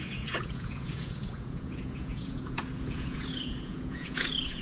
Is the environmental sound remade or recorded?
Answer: remade